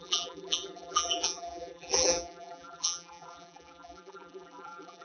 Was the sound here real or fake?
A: fake